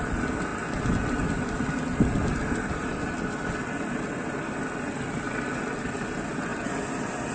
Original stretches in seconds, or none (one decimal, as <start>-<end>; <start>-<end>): 0.0-7.3